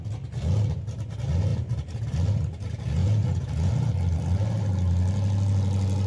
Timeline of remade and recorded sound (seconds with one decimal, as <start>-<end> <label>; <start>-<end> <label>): 0.0-3.0 recorded; 3.0-3.7 remade; 3.7-6.1 recorded